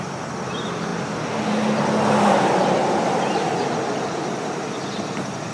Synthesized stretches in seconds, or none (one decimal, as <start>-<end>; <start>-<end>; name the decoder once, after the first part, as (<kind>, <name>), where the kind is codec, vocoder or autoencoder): none